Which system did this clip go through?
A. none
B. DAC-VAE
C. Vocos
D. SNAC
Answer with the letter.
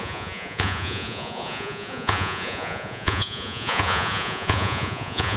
C